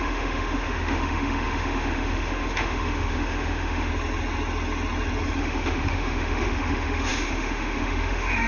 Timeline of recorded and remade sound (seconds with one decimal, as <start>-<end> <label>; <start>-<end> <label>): 0.0-3.9 remade; 3.9-5.4 recorded; 5.4-8.5 remade